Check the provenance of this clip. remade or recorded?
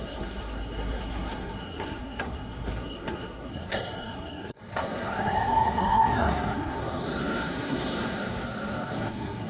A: remade